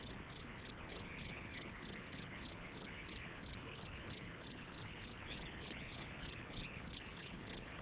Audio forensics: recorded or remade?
remade